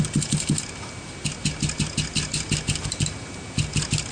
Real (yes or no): yes